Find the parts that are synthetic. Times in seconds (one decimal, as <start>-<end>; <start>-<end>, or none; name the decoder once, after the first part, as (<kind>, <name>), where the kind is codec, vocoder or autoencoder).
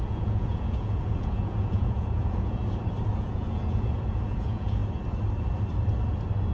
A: 0.0-2.6 (vocoder, Vocos); 3.2-4.8